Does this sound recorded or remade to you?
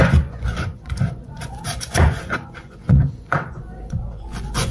remade